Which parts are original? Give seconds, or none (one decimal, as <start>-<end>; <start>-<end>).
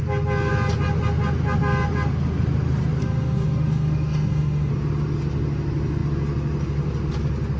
0.0-3.0; 4.7-7.6